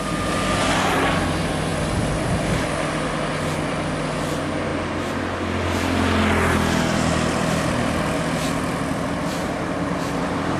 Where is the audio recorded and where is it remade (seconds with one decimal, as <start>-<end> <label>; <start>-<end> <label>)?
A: 0.0-10.6 recorded

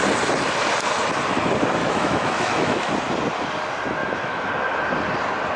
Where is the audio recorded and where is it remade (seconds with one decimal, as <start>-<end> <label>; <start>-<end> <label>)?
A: 0.0-1.8 recorded; 1.8-2.9 remade; 2.9-4.0 recorded; 4.0-4.5 remade; 4.5-5.6 recorded

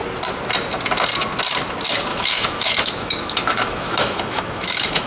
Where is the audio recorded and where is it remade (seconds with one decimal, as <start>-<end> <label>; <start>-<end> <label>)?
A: 0.0-2.1 recorded; 2.1-5.1 remade

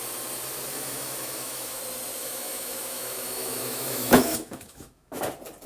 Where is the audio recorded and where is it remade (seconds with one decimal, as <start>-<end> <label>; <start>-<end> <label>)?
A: 0.0-0.7 recorded; 0.7-1.8 remade; 1.8-2.2 recorded; 2.2-5.2 remade; 5.2-5.7 recorded

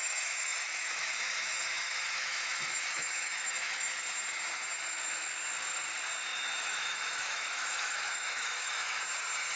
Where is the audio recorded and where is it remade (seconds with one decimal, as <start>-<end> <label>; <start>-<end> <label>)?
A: 0.0-4.0 remade; 4.0-6.3 recorded; 6.3-9.0 remade; 9.0-9.6 recorded

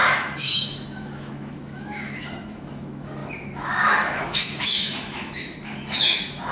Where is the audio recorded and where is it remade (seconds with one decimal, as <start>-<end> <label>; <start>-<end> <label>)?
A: 0.0-6.5 remade